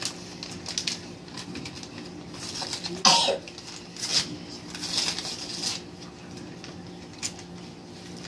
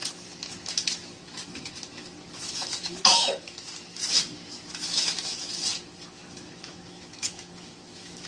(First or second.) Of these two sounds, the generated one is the second